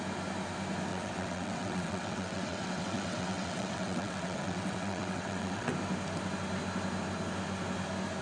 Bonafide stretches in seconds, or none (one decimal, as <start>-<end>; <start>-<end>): 0.0-0.9; 5.7-8.2